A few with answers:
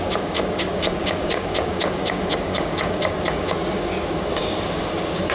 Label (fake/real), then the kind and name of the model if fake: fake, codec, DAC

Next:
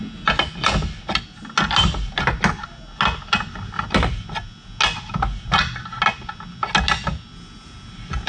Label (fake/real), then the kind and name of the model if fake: real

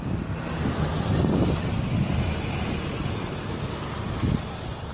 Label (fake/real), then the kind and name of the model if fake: real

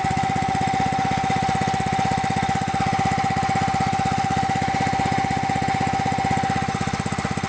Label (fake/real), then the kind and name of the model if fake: real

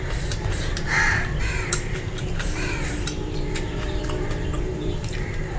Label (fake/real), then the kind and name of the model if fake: fake, vocoder, BigVGAN v2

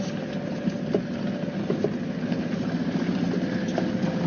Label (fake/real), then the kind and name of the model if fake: real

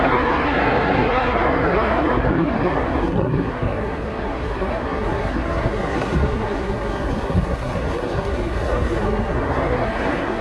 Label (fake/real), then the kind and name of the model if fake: fake, codec, SNAC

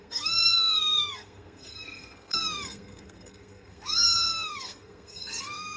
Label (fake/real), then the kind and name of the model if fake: fake, codec, SNAC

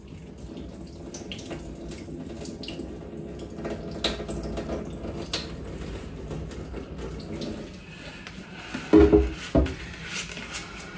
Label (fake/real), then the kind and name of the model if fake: real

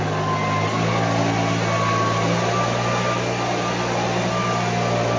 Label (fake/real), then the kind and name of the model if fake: real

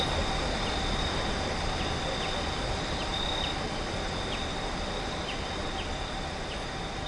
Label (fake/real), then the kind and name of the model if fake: real